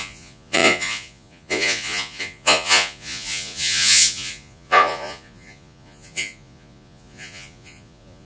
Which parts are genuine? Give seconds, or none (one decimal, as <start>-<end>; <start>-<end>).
none